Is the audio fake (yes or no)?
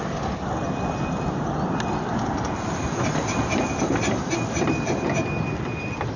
no